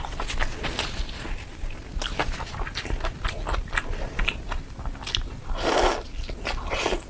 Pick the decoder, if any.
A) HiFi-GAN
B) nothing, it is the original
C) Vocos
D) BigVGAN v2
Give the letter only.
B